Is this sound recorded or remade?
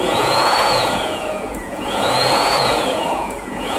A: remade